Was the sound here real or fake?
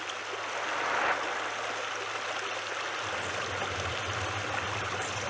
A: real